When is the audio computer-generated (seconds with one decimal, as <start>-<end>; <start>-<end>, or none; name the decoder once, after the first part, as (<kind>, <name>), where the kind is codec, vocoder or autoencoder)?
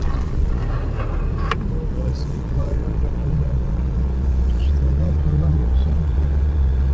0.0-0.6 (vocoder, Vocos); 1.9-6.9